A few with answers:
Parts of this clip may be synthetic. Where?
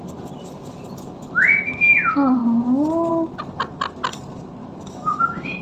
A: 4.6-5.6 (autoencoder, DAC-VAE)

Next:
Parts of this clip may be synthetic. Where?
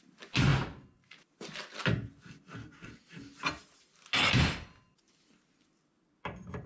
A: none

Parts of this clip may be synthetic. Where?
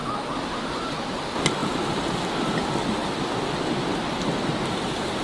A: 0.0-1.2 (vocoder, BigVGAN v2); 1.6-2.4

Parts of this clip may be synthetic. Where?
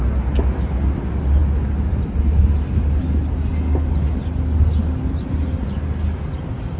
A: none